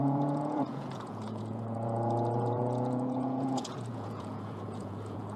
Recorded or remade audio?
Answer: remade